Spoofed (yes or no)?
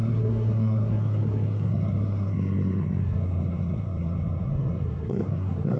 yes